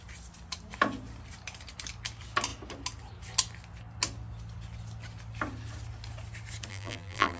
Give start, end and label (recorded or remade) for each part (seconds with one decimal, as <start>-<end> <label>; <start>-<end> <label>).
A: 0.0-6.7 recorded; 6.7-7.4 remade